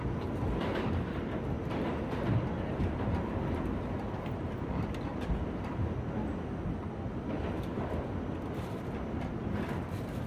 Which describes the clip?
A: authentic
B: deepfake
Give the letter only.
A